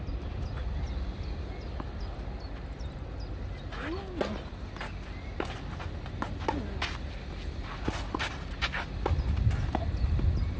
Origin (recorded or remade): recorded